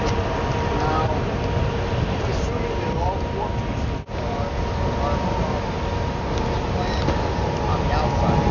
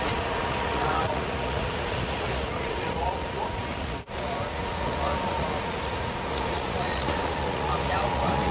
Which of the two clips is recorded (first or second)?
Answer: first